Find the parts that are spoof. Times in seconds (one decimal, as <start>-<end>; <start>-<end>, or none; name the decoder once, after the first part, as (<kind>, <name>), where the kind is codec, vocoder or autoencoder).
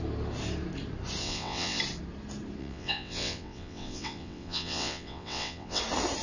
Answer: 1.2-1.8 (vocoder, WaveNeXt); 2.6-5.8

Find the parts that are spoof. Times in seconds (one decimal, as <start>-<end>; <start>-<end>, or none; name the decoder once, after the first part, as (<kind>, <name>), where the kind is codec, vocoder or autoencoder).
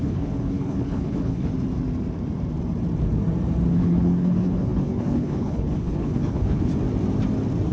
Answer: 0.0-1.5 (codec, HILCodec); 3.7-6.7